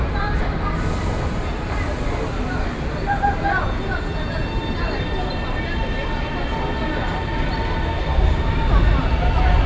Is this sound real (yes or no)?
yes